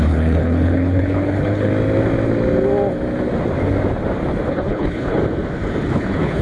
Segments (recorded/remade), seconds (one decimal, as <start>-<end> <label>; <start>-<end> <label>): 0.0-1.7 remade; 1.7-4.5 recorded; 4.5-5.2 remade; 5.2-5.9 recorded; 5.9-6.4 remade